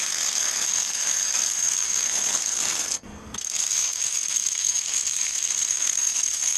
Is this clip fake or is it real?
fake